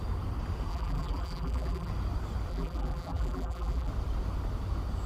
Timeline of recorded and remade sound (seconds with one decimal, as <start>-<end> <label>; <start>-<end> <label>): 0.0-0.7 recorded; 0.7-1.9 remade; 1.9-2.5 recorded; 2.5-3.9 remade; 3.9-5.1 recorded